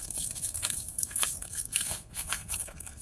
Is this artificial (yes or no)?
yes